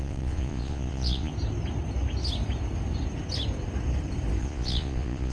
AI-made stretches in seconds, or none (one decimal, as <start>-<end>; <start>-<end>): 0.0-1.3; 4.4-5.3